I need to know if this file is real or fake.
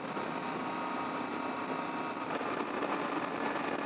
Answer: real